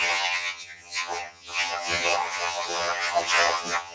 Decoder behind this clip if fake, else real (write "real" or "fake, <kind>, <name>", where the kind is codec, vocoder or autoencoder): fake, vocoder, HiFi-GAN